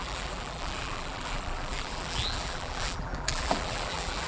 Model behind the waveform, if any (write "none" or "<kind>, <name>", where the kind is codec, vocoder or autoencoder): vocoder, BigVGAN v2